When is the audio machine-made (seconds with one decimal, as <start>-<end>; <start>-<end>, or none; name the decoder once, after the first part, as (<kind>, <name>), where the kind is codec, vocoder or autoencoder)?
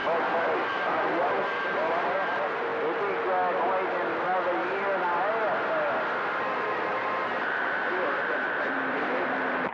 0.7-2.7 (vocoder, BigVGAN v2); 6.4-9.7